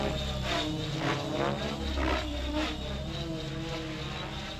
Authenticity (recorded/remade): recorded